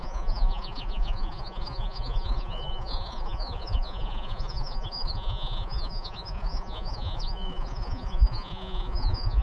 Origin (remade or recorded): remade